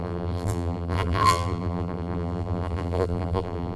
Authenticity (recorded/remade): remade